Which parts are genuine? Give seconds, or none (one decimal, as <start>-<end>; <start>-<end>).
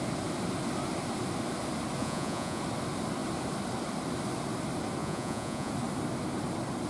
0.0-2.0; 2.6-5.0; 5.7-6.9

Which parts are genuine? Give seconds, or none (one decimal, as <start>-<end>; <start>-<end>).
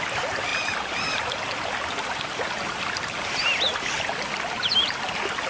0.0-5.5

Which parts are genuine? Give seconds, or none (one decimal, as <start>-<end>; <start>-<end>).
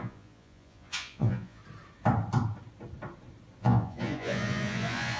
1.6-3.6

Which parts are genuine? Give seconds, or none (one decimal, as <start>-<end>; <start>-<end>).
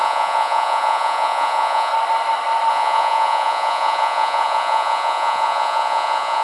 1.9-2.7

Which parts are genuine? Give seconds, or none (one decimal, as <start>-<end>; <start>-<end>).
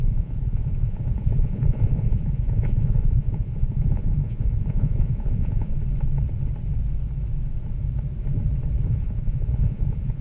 5.7-8.9